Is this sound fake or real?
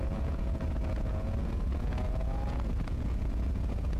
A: fake